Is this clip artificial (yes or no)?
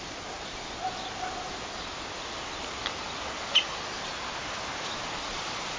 no